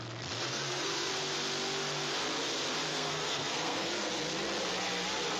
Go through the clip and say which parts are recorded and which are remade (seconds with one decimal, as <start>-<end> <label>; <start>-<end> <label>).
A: 0.0-0.5 recorded; 0.5-1.1 remade; 1.1-2.9 recorded; 2.9-4.1 remade; 4.1-5.4 recorded